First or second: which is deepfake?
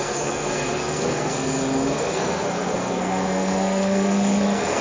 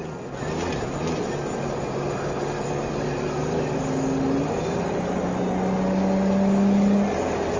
first